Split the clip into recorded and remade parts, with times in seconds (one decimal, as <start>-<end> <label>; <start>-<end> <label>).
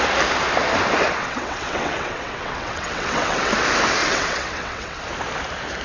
0.0-1.2 recorded; 1.2-3.5 remade; 3.5-4.0 recorded; 4.0-5.0 remade; 5.0-5.8 recorded